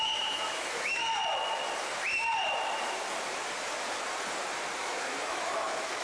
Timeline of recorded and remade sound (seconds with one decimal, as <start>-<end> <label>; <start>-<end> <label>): 0.0-1.2 remade; 1.2-4.8 recorded; 4.8-6.0 remade